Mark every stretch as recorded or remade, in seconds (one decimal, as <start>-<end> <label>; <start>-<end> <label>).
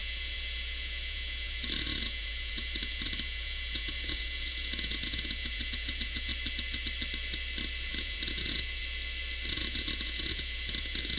0.0-6.3 remade; 6.3-7.9 recorded; 7.9-8.8 remade; 8.8-9.5 recorded; 9.5-11.2 remade